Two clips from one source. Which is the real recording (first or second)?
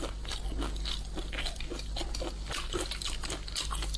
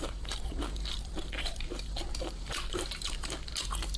first